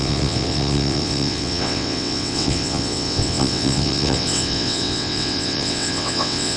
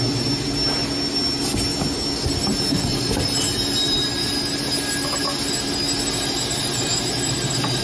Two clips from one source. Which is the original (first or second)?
second